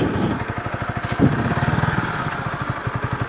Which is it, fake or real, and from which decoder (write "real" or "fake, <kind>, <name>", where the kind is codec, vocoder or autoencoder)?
real